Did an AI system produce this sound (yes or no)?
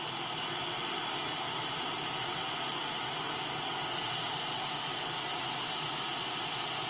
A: no